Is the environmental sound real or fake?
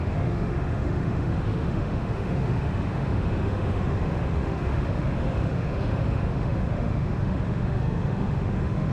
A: fake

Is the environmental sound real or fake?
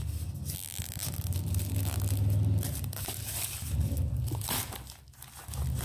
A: real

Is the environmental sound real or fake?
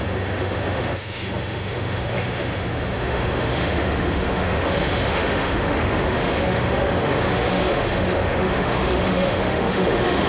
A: fake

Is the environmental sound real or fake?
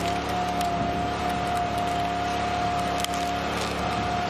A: real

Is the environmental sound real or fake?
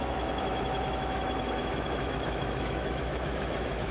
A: fake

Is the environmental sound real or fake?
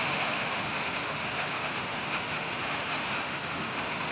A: fake